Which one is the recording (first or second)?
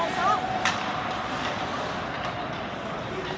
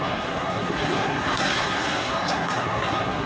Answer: first